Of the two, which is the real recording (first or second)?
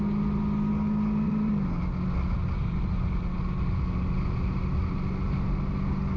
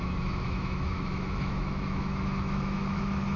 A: first